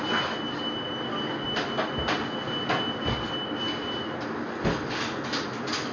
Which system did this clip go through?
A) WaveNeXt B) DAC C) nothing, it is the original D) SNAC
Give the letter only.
C